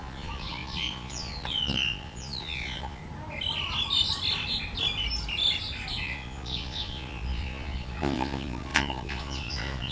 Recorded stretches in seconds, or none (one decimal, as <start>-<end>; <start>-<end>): 3.0-5.9